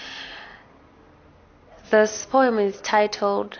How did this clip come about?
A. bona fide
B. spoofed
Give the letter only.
A